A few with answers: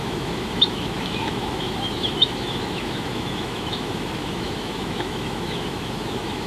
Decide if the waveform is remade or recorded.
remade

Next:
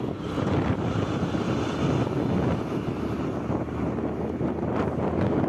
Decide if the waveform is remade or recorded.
recorded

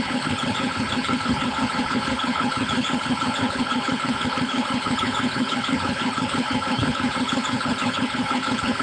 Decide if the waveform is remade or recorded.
remade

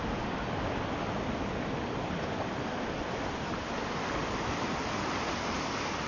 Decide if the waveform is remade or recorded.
recorded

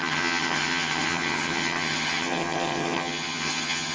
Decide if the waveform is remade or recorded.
remade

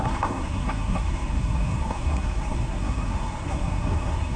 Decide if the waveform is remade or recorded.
remade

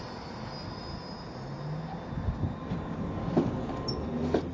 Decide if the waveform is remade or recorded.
recorded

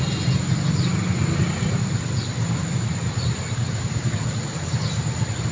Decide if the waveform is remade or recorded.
recorded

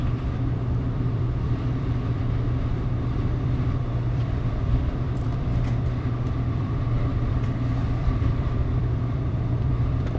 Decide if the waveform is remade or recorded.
remade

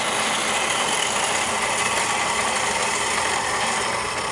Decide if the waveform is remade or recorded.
recorded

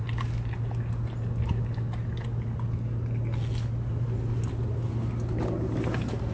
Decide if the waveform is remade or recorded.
recorded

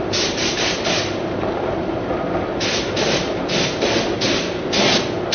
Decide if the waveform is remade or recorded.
recorded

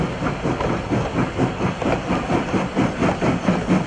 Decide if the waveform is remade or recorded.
recorded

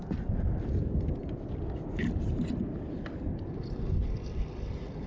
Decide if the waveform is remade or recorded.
recorded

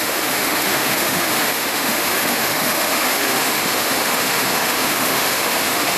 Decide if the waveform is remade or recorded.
remade